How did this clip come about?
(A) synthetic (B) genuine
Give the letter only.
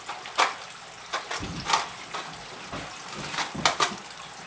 B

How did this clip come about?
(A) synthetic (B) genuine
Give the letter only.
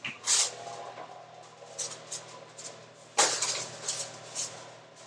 B